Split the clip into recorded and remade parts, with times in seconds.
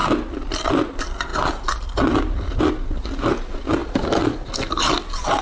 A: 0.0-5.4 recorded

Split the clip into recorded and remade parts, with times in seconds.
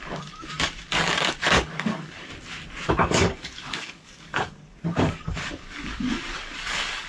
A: 0.0-2.3 remade; 2.3-2.9 recorded; 2.9-7.1 remade